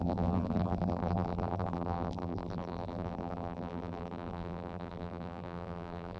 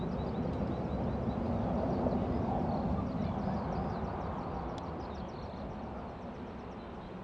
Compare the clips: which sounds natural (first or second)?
second